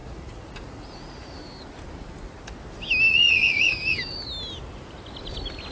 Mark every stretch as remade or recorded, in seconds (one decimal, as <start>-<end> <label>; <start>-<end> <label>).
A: 0.0-1.4 remade; 1.4-3.1 recorded; 3.1-3.7 remade; 3.7-5.7 recorded